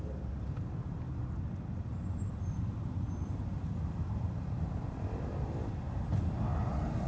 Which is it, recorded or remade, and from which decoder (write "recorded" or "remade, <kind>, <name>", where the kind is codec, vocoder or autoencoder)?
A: recorded